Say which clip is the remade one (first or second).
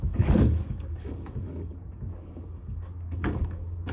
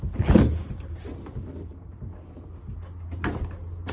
first